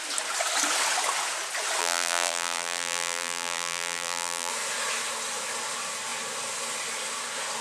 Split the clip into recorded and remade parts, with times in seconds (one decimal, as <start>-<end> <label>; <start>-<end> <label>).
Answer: 0.0-1.8 recorded; 1.8-4.5 remade; 4.5-7.6 recorded